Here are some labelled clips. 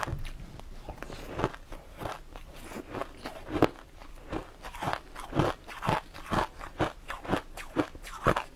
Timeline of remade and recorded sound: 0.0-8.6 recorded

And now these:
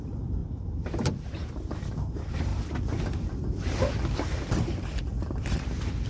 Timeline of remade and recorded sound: 0.0-6.1 remade

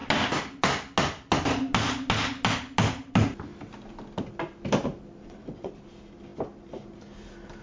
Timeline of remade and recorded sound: 0.0-5.2 recorded; 5.2-5.7 remade; 5.7-7.6 recorded

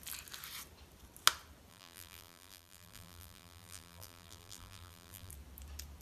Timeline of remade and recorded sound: 0.0-1.7 recorded; 1.7-5.3 remade; 5.3-6.0 recorded

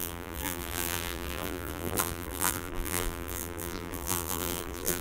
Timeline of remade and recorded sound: 0.0-5.0 remade

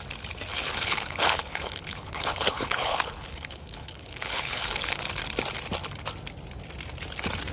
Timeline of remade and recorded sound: 0.0-0.5 recorded; 0.5-5.0 remade; 5.0-7.5 recorded

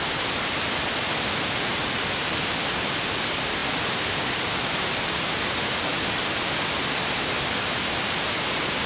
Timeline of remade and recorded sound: 0.0-8.9 recorded